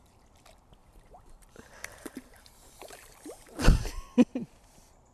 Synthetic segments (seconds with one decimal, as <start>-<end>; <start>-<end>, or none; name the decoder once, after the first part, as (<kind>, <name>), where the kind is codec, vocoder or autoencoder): 0.8-3.9 (vocoder, BigVGAN v2)